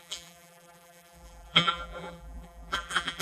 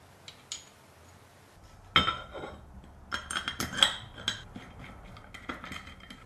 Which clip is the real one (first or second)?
second